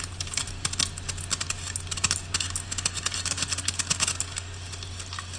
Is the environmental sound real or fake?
real